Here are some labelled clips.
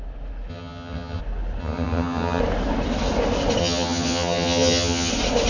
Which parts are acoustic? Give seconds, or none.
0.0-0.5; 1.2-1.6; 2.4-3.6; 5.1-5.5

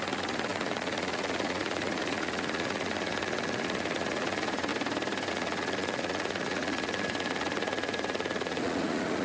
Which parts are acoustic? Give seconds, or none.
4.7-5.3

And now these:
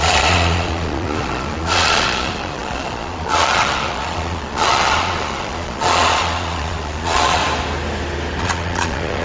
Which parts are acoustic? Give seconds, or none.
7.4-8.4